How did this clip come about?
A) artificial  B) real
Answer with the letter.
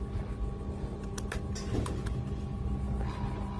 B